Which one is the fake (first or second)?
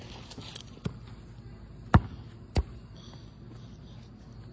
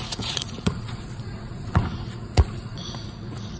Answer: second